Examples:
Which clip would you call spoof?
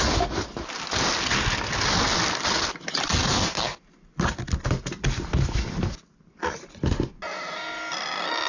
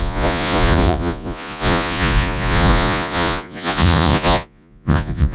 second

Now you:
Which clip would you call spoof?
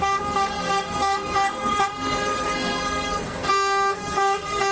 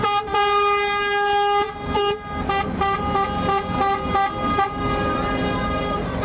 first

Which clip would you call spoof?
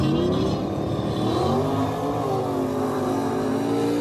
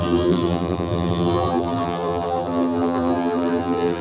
second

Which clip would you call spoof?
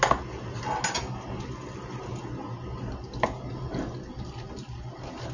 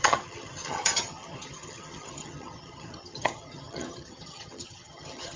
second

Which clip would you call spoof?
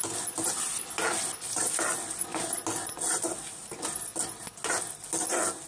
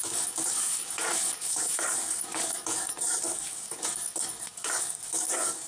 second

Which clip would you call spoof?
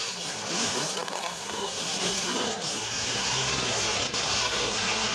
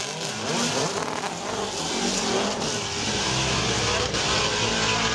first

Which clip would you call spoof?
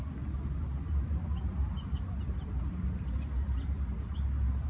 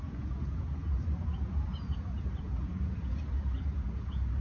second